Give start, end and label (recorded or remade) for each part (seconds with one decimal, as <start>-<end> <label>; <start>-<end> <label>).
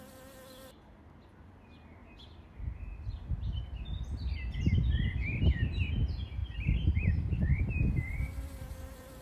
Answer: 0.0-6.4 recorded; 6.4-7.6 remade; 7.6-8.3 recorded; 8.3-9.2 remade